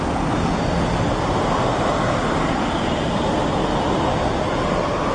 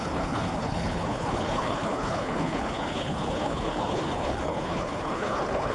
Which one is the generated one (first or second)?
second